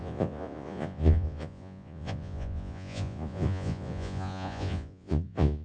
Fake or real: fake